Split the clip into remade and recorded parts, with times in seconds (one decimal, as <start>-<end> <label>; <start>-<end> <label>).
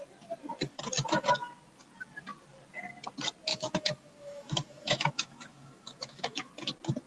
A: 0.0-3.5 recorded; 3.5-6.5 remade; 6.5-7.1 recorded